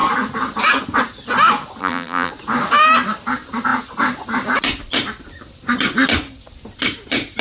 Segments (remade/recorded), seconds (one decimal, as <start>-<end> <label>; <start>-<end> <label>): 0.0-1.8 recorded; 1.8-2.3 remade; 2.3-7.4 recorded